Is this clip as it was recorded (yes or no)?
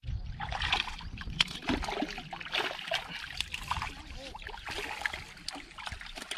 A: yes